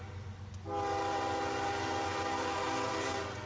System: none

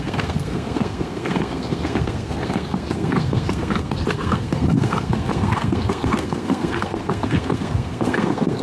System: codec, SNAC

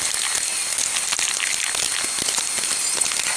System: none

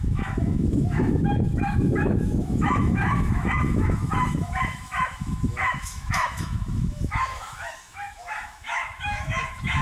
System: autoencoder, DAC-VAE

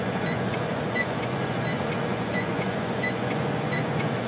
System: vocoder, Vocos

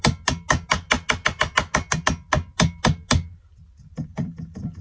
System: none